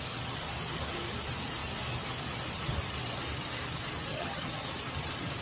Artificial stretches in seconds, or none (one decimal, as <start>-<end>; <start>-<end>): 4.1-4.7